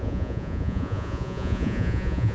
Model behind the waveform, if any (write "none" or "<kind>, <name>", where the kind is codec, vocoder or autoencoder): vocoder, Vocos